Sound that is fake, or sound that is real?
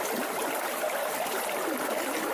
real